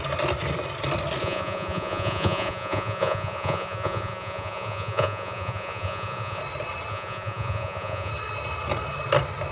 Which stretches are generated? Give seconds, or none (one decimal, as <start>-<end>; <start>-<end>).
1.2-6.4; 6.9-8.1